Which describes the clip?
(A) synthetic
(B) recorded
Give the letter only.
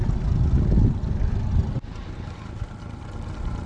B